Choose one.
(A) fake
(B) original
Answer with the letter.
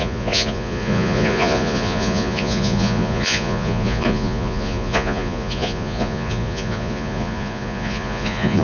A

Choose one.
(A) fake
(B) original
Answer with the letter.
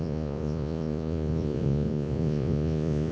A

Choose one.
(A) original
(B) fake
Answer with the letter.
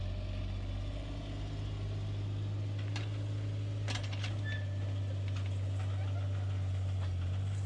A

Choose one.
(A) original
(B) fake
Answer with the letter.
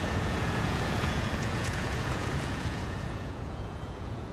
B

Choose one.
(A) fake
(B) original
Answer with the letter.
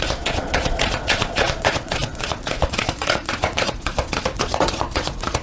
A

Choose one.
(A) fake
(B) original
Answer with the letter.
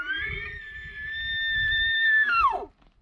B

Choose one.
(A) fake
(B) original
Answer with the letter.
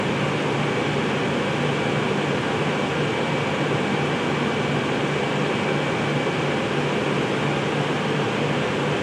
B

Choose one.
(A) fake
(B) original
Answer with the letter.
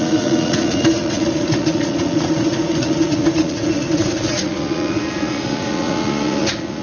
A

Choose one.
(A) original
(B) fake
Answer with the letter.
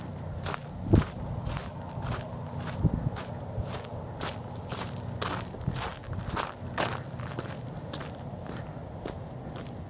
A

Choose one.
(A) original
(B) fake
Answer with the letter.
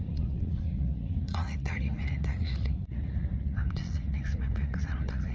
B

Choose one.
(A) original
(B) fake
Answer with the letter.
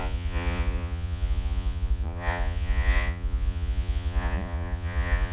B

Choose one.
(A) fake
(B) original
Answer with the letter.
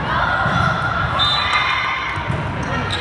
B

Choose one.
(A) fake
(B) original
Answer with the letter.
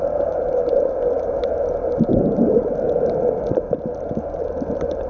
B